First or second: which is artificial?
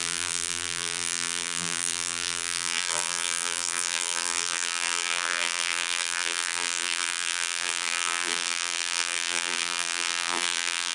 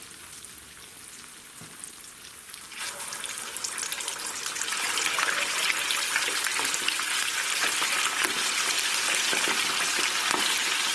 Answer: first